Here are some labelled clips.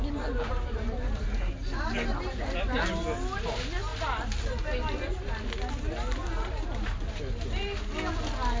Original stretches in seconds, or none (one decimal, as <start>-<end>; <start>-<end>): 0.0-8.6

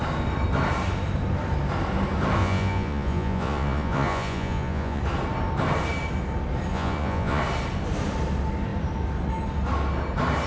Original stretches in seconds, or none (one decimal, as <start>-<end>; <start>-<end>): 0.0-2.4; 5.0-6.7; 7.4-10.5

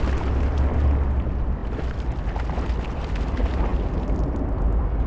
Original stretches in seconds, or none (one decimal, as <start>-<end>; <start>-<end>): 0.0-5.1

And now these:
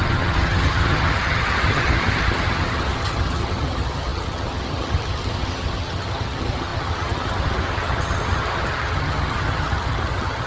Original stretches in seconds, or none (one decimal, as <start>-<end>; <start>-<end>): none

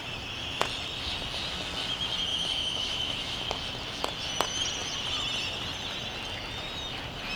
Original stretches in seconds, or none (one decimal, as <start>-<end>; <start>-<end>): 0.0-2.3; 3.4-7.4